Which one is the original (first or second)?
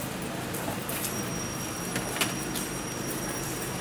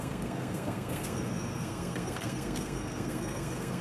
first